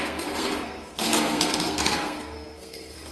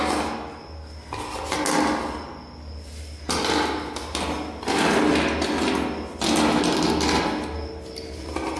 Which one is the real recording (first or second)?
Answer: second